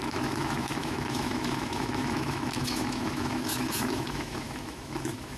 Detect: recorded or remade remade